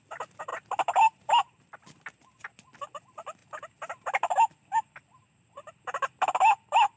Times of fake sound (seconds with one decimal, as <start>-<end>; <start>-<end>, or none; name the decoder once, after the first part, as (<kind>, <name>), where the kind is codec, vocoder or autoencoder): none